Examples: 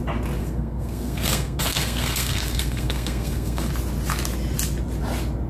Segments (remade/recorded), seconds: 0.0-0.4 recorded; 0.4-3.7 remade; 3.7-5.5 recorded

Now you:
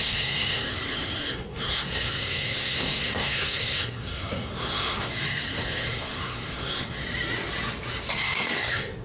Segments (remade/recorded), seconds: 0.0-7.0 remade; 7.0-8.2 recorded; 8.2-9.0 remade

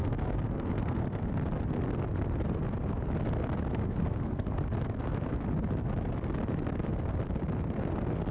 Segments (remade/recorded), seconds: 0.0-1.2 remade; 1.2-3.7 recorded; 3.7-4.5 remade; 4.5-8.3 recorded